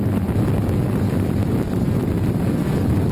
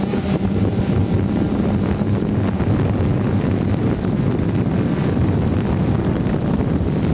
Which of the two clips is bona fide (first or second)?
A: first